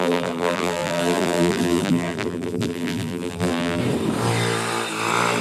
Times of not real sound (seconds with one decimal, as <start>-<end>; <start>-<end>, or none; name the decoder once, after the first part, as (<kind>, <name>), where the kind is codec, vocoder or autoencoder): 0.0-3.8 (vocoder, BigVGAN v2)